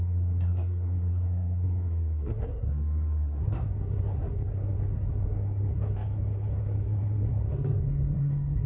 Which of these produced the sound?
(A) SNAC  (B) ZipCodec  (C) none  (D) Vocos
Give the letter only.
A